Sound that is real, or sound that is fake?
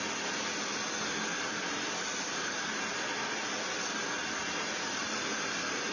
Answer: real